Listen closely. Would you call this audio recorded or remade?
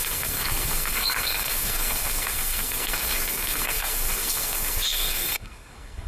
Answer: remade